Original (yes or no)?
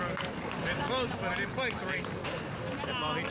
yes